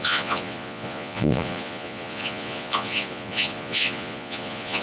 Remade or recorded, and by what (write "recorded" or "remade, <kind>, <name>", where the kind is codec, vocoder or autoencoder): remade, vocoder, Vocos